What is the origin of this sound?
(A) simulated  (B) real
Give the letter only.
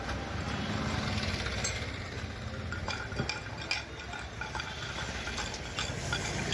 B